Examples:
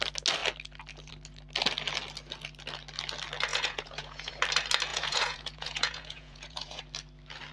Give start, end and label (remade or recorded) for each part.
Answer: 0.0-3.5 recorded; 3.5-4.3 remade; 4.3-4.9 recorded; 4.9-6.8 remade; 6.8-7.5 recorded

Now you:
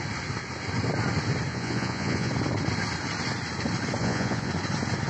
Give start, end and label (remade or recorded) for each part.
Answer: 0.0-1.5 recorded; 1.5-2.3 remade; 2.3-4.0 recorded; 4.0-4.5 remade; 4.5-5.1 recorded

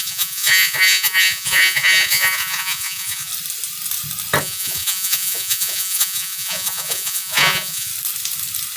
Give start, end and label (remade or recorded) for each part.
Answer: 0.0-3.3 remade; 3.3-4.4 recorded; 4.4-7.9 remade; 7.9-8.8 recorded

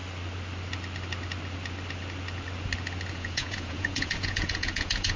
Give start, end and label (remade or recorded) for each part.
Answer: 0.0-3.1 recorded; 3.1-5.2 remade

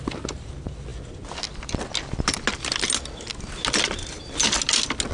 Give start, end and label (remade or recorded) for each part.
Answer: 0.0-5.1 recorded

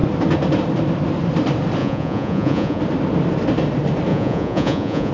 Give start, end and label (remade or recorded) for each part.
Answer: 0.0-1.8 recorded; 1.8-2.8 remade; 2.8-4.1 recorded; 4.1-5.1 remade

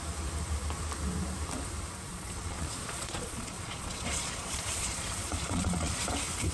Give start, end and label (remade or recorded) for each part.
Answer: 0.0-2.1 recorded; 2.1-6.0 remade; 6.0-6.5 recorded